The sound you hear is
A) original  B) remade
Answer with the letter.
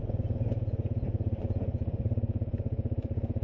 B